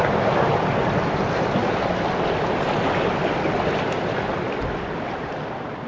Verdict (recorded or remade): recorded